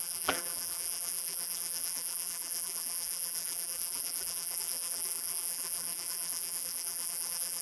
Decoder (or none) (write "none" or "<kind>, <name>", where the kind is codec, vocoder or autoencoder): vocoder, BigVGAN v2